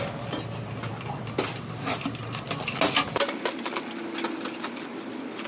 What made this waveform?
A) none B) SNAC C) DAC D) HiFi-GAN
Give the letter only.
A